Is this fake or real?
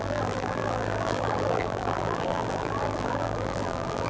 fake